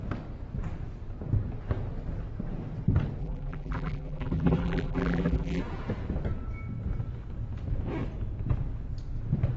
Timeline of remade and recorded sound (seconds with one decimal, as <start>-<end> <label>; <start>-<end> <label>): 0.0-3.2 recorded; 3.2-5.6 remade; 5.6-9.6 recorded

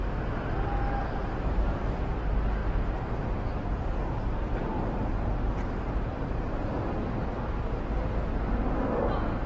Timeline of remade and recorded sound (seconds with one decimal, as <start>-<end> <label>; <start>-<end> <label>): 0.0-1.2 recorded; 1.2-2.1 remade; 2.1-2.6 recorded; 2.6-7.5 remade; 7.5-9.5 recorded

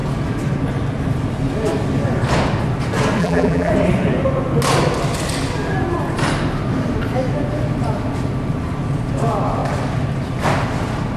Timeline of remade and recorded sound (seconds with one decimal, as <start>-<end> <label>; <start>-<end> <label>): 0.0-3.2 recorded; 3.2-3.7 remade; 3.7-11.2 recorded